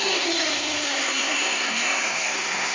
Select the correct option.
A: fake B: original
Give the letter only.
A